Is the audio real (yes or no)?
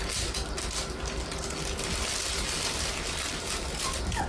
yes